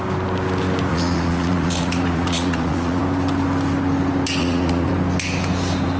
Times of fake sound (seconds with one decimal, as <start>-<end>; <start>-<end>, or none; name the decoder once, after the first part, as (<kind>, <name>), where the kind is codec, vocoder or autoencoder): 0.9-3.0 (vocoder, Vocos); 4.4-4.9

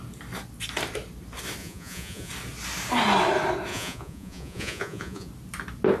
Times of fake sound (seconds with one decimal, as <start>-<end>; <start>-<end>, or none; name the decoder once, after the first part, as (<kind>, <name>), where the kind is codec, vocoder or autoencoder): 1.6-2.3 (vocoder, Vocos); 3.7-5.3

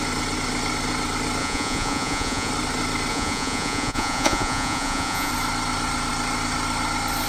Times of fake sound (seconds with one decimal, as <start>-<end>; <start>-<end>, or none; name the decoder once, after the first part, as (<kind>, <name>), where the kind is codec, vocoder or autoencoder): 1.4-2.5 (vocoder, Vocos); 3.1-5.3

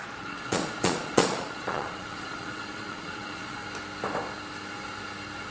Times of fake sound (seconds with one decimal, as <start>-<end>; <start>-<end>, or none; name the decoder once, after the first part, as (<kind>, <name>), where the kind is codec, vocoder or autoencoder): 0.0-3.6 (vocoder, Vocos)

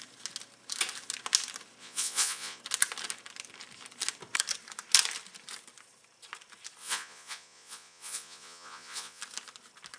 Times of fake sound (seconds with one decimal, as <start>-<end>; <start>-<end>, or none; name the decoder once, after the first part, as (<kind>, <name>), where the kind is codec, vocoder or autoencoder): 1.8-2.6 (vocoder, Vocos); 6.8-9.2

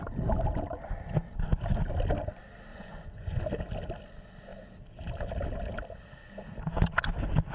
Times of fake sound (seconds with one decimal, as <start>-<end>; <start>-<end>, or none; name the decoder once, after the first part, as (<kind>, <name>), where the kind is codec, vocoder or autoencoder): 2.7-3.4 (vocoder, Vocos)

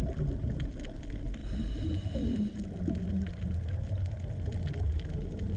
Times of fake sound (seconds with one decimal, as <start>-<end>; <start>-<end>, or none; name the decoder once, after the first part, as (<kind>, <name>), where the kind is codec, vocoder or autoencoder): none

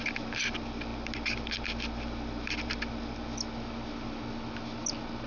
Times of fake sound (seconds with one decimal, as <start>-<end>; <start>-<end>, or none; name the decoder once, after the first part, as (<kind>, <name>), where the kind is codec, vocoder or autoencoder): none